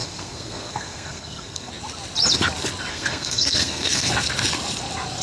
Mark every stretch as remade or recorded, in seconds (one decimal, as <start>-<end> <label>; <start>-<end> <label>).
0.0-1.7 remade; 1.7-2.9 recorded; 2.9-4.1 remade; 4.1-5.2 recorded